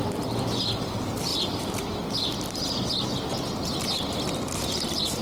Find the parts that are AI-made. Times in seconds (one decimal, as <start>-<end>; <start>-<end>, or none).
none